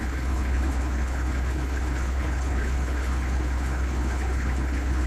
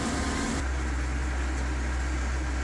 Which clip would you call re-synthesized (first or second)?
first